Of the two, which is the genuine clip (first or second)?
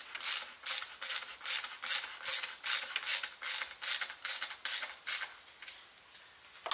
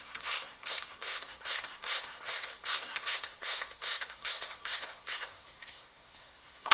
first